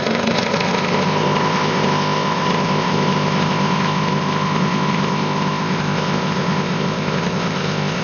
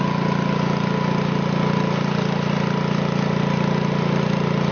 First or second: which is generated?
first